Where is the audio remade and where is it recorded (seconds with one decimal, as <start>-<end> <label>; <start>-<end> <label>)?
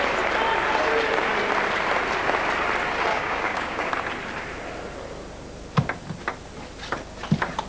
0.0-3.1 recorded; 3.1-3.9 remade; 3.9-7.7 recorded